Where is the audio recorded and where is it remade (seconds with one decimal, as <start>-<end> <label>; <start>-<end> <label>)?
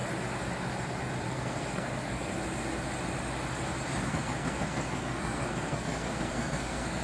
0.0-1.3 recorded; 1.3-2.3 remade; 2.3-4.0 recorded; 4.0-7.0 remade